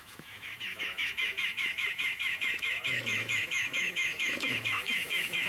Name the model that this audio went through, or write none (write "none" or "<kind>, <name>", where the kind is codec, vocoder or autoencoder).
autoencoder, DAC-VAE